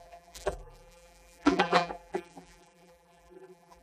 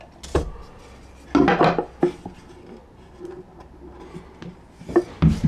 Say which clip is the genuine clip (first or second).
second